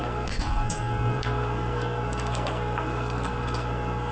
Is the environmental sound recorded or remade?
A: remade